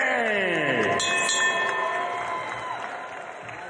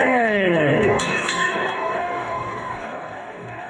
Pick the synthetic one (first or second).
second